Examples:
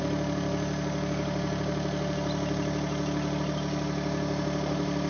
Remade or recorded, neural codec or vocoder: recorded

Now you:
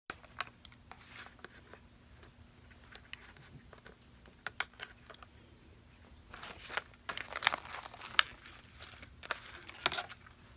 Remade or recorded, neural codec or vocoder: recorded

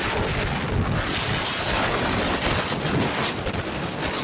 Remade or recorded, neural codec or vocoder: recorded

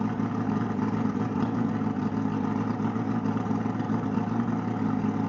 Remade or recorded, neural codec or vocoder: recorded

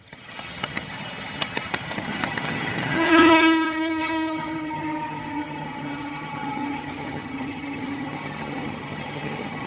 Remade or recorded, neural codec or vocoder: remade, vocoder, HiFi-GAN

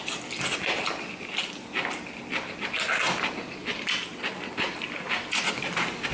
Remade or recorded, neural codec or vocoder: recorded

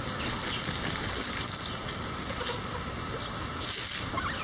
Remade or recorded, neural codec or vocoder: recorded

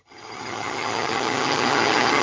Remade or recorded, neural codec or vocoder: remade, vocoder, HiFi-GAN